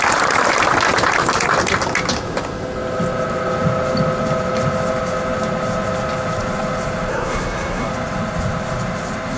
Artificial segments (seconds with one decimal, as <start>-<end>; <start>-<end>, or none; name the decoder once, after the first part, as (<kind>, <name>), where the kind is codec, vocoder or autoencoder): 7.1-7.9 (codec, SNAC)